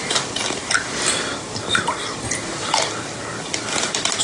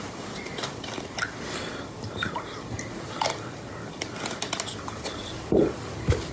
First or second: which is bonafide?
first